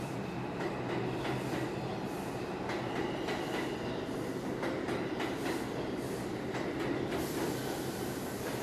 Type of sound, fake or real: real